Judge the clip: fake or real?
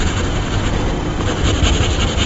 real